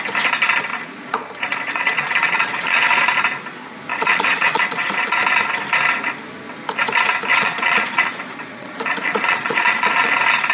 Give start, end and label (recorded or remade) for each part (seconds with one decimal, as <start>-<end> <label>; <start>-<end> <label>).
0.0-0.7 recorded; 0.7-2.9 remade; 2.9-3.9 recorded; 3.9-5.2 remade; 5.2-7.3 recorded; 7.3-10.1 remade; 10.1-10.5 recorded